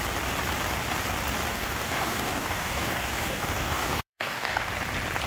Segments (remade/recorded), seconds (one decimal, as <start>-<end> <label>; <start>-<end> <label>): 0.0-1.5 recorded; 1.5-4.7 remade; 4.7-5.3 recorded